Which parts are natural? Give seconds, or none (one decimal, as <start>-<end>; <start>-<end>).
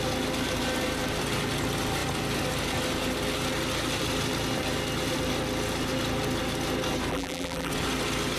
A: 0.0-7.1; 7.7-8.4